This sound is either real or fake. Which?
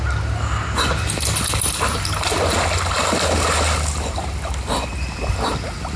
real